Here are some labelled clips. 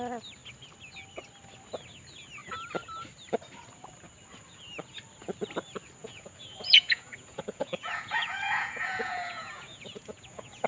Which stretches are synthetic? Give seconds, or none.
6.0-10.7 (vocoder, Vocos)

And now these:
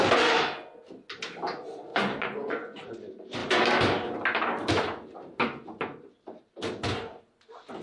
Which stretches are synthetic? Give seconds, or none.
1.9-2.9 (vocoder, Vocos)

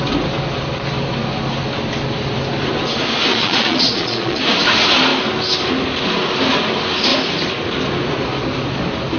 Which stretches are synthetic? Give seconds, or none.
3.3-4.4 (vocoder, Vocos)